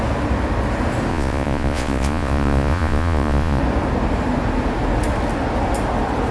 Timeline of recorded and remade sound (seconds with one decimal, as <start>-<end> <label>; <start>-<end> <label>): 0.0-1.1 recorded; 1.1-3.6 remade; 3.6-6.3 recorded